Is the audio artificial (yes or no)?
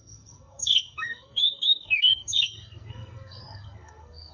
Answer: yes